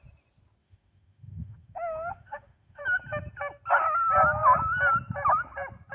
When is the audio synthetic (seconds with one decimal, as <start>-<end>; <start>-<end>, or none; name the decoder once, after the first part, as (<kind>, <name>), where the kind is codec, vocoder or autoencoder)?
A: 0.6-2.8 (autoencoder, DAC-VAE)